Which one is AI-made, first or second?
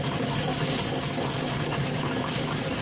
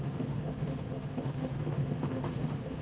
second